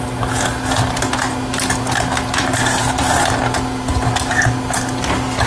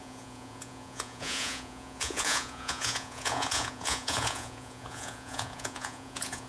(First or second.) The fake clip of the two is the second